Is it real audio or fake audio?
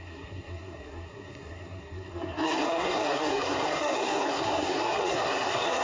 fake